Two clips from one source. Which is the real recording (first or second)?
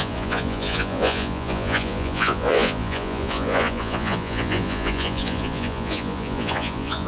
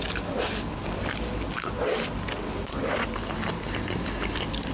second